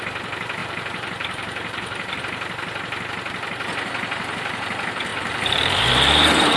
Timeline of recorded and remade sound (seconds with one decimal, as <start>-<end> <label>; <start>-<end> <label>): 0.0-0.6 recorded; 0.6-2.2 remade; 2.2-5.1 recorded; 5.1-5.9 remade; 5.9-6.6 recorded